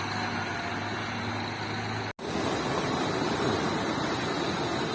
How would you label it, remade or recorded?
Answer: recorded